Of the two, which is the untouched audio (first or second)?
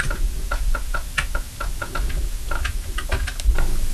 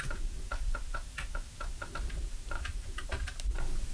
first